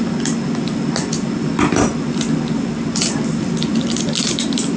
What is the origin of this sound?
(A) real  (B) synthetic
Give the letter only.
A